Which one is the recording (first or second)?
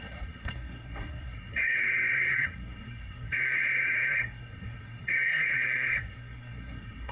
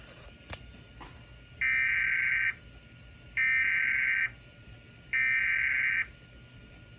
second